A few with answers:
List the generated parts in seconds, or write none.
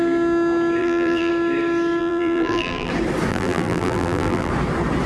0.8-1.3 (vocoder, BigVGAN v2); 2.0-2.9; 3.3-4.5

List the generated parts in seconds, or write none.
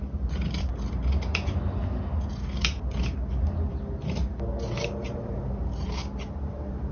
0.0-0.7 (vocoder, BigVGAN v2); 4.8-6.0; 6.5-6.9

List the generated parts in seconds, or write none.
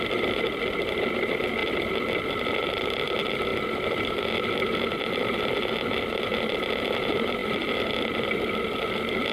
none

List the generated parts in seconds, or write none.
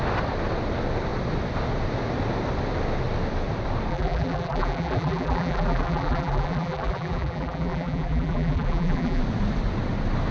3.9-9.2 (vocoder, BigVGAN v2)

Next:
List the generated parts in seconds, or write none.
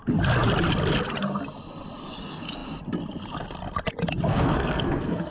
4.3-5.3 (codec, SNAC)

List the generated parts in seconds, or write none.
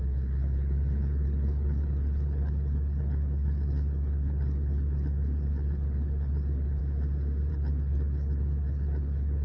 0.0-6.8 (codec, HILCodec); 7.5-9.4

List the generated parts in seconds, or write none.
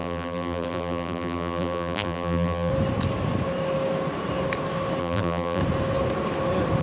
0.0-2.7 (vocoder, BigVGAN v2); 5.0-5.6